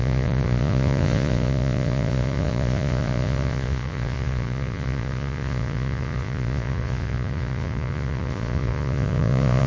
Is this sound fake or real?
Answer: fake